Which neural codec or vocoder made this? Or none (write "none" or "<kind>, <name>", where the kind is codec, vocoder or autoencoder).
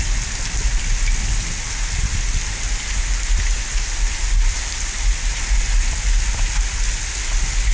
none